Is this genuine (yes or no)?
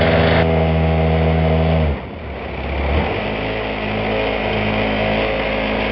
yes